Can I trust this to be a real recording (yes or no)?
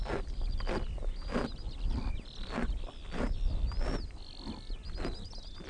yes